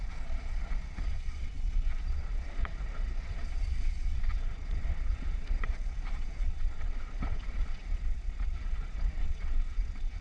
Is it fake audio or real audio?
fake